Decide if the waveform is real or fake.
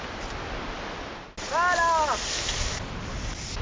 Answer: real